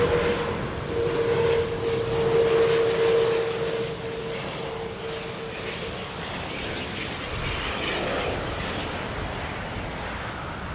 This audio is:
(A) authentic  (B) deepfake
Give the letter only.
A